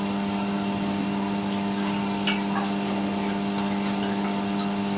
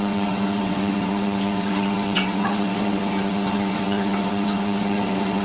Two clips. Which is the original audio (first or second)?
first